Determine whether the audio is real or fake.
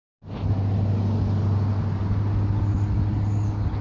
real